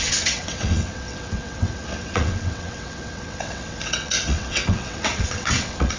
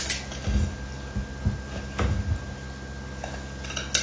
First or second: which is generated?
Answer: first